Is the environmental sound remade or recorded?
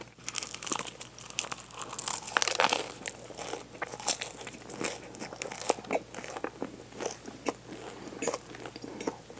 recorded